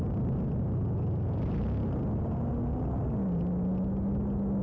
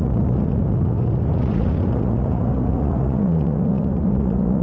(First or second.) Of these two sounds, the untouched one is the first